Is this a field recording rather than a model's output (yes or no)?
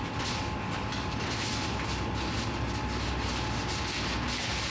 yes